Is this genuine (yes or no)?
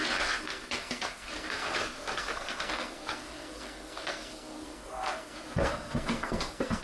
no